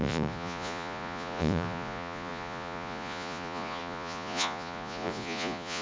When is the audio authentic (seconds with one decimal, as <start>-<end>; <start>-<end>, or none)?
none